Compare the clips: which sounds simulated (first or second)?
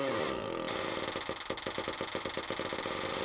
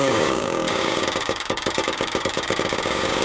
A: second